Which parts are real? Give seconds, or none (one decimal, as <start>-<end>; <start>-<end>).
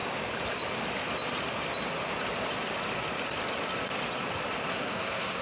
0.0-4.7